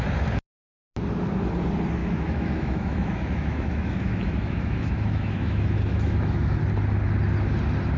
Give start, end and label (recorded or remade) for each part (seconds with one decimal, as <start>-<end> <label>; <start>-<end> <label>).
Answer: 0.0-2.0 recorded; 2.0-6.6 remade; 6.6-8.0 recorded

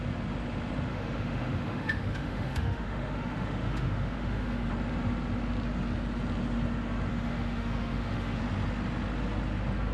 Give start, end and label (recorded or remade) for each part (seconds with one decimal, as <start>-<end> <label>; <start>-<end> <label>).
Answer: 0.0-0.9 recorded; 0.9-4.7 remade; 4.7-7.1 recorded; 7.1-8.4 remade; 8.4-9.9 recorded

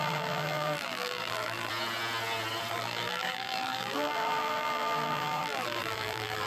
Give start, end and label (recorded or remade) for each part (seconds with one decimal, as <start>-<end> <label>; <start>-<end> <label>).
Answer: 0.0-1.7 remade; 1.7-2.7 recorded; 2.7-6.5 remade

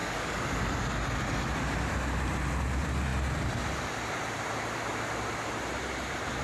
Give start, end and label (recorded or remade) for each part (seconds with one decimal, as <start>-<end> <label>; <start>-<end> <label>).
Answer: 0.0-0.6 remade; 0.6-6.4 recorded